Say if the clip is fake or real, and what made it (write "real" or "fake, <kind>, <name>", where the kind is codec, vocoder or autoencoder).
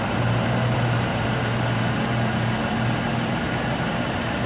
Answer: fake, vocoder, BigVGAN v2